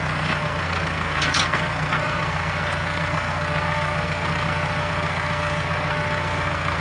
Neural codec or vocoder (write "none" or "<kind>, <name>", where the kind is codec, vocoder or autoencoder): codec, SNAC